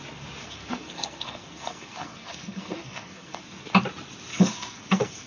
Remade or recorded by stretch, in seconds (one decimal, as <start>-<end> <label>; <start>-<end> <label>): 0.0-0.4 recorded; 0.4-3.4 remade; 3.4-4.3 recorded; 4.3-5.3 remade